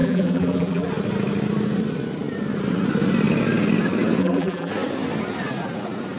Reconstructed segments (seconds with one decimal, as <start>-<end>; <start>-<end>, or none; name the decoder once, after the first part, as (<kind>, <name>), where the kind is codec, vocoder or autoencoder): 0.0-0.9 (vocoder, BigVGAN v2); 4.2-4.7